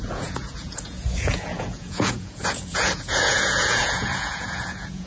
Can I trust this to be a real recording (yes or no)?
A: no